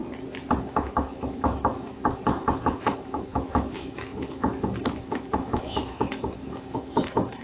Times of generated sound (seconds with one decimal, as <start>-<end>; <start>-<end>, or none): 0.6-7.4